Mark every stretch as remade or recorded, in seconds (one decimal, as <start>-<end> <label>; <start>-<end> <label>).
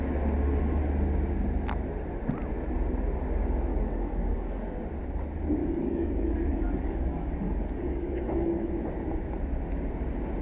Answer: 0.0-3.7 recorded; 3.7-4.6 remade; 4.6-5.6 recorded; 5.6-8.7 remade; 8.7-10.4 recorded